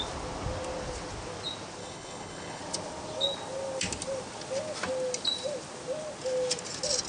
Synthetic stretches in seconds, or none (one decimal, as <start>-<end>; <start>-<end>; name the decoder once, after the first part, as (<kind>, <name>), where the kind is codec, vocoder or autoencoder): 1.8-2.6 (codec, HILCodec)